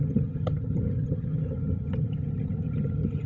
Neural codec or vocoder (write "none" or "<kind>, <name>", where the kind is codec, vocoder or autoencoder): vocoder, HiFi-GAN